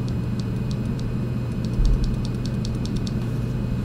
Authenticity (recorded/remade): remade